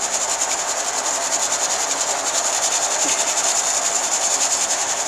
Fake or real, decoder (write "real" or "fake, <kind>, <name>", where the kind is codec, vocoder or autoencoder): real